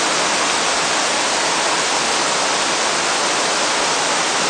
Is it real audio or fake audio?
real